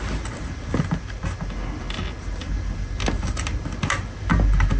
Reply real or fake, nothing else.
real